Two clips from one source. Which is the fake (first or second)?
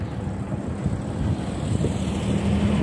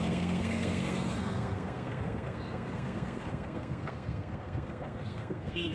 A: second